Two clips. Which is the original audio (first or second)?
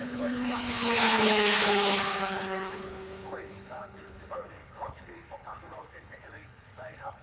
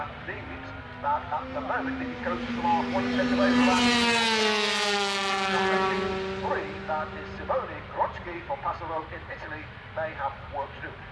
second